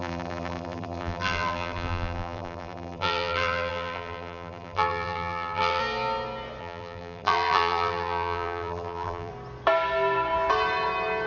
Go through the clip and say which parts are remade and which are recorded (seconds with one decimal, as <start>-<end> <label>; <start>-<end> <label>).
0.0-5.8 remade; 5.8-6.6 recorded; 6.6-9.3 remade; 9.3-11.3 recorded